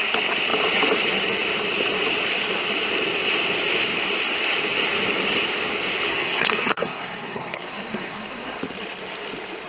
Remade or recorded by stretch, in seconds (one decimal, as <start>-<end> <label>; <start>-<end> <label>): 0.0-6.1 recorded; 6.1-8.6 remade; 8.6-9.7 recorded